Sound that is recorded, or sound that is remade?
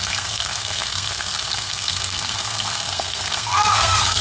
remade